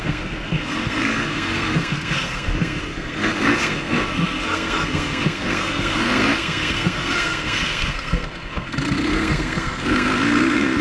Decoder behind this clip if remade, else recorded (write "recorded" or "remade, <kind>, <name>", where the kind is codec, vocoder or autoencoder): remade, codec, SNAC